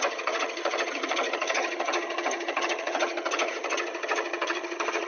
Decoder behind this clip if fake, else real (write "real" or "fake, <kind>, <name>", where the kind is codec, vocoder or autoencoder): fake, vocoder, HiFi-GAN